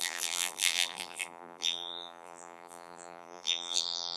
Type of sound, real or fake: fake